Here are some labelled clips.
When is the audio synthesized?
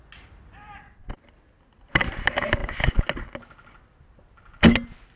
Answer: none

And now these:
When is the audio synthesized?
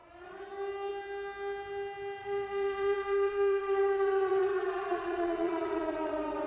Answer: 2.2-6.1 (vocoder, WaveNeXt)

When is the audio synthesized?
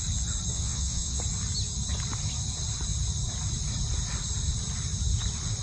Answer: 0.5-1.2 (vocoder, WaveNeXt)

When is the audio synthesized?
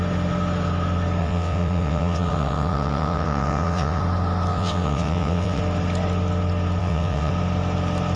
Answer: 1.2-4.0 (vocoder, WaveNeXt); 4.5-5.6; 6.8-7.3